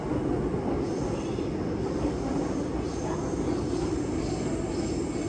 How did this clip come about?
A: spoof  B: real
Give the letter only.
B